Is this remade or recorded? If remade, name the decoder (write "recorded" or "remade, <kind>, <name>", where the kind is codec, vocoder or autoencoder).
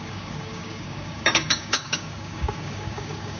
remade, codec, DAC